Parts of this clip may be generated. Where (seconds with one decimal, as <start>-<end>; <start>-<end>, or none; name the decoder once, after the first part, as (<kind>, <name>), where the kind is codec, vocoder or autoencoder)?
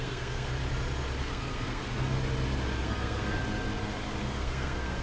0.0-0.5 (codec, SNAC); 1.2-1.8; 2.8-3.4; 4.2-5.0